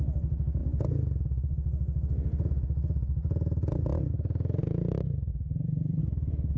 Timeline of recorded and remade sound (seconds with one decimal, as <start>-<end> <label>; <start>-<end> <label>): 0.0-5.3 recorded; 5.3-6.0 remade; 6.0-6.6 recorded